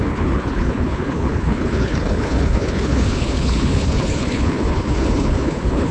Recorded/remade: remade